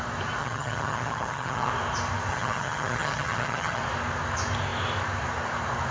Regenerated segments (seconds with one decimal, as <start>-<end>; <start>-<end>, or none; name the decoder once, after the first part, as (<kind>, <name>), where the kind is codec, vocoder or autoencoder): 0.4-1.7 (vocoder, HiFi-GAN); 2.3-3.8